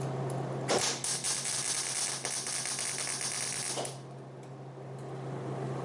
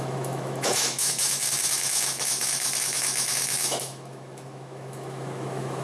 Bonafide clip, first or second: first